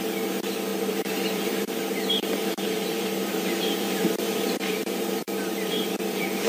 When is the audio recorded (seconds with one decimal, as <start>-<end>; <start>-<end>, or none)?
0.0-0.7; 1.8-2.4